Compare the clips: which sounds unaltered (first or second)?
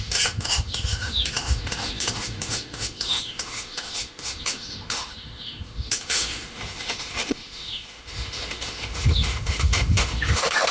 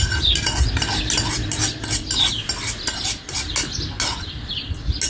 second